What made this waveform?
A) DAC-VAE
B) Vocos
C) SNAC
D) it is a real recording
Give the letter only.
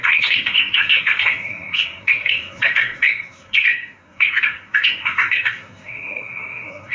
C